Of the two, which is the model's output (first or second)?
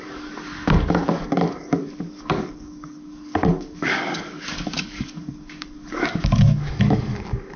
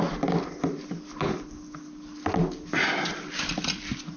first